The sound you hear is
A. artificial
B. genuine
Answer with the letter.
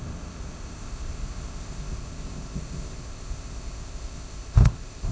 A